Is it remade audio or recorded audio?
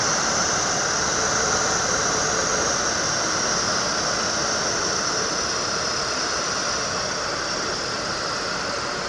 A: recorded